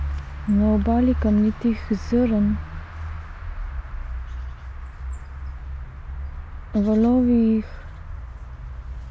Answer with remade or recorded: recorded